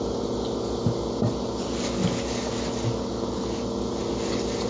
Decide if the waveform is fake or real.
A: real